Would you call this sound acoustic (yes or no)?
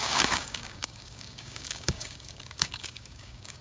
no